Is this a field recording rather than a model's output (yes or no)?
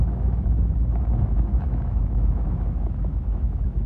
no